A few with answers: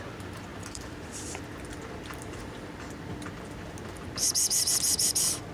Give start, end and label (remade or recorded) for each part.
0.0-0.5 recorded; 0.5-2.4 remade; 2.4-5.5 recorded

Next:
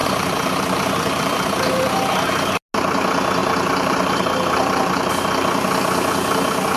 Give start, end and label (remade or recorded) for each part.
0.0-2.0 remade; 2.0-3.4 recorded; 3.4-5.1 remade; 5.1-6.8 recorded

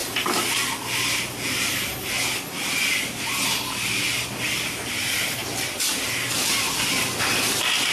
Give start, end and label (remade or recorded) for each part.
0.0-7.9 recorded

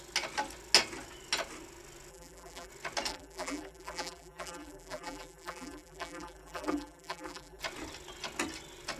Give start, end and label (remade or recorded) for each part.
0.0-2.1 recorded; 2.1-2.7 remade; 2.7-3.1 recorded; 3.1-7.6 remade; 7.6-9.0 recorded

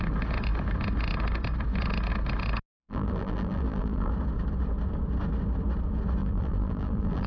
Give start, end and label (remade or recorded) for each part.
0.0-2.8 recorded; 2.8-4.1 remade; 4.1-6.2 recorded; 6.2-7.3 remade

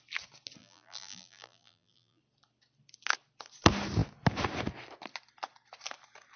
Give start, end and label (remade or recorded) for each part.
0.0-0.6 recorded; 0.6-2.2 remade; 2.2-6.4 recorded

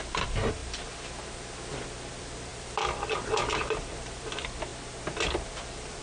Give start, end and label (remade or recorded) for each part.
0.0-0.6 remade; 0.6-2.1 recorded; 2.1-4.7 remade; 4.7-5.5 recorded; 5.5-6.0 remade

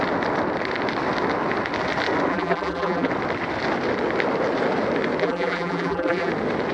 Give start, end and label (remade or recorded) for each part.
0.0-2.3 recorded; 2.3-3.1 remade; 3.1-5.2 recorded; 5.2-6.3 remade; 6.3-6.7 recorded